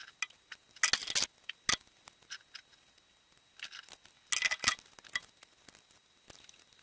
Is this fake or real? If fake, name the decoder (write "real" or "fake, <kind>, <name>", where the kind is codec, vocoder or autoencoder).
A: real